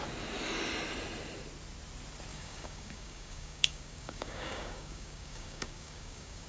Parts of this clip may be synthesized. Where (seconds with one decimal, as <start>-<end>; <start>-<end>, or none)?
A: 2.3-6.5